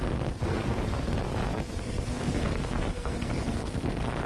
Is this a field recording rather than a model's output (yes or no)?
no